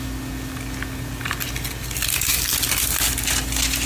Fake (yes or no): no